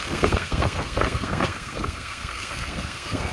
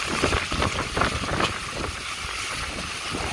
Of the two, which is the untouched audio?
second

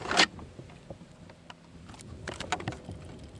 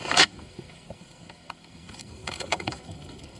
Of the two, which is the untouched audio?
first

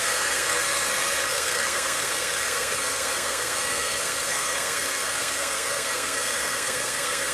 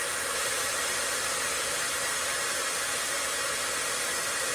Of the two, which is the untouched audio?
second